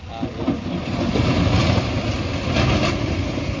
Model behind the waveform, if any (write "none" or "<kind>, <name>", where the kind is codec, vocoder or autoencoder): none